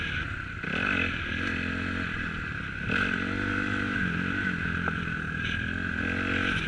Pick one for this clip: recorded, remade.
recorded